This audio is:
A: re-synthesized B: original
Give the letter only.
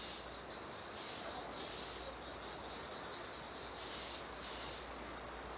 B